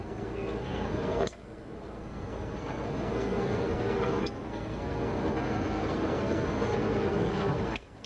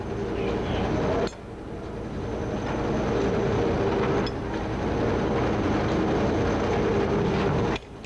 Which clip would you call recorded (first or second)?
second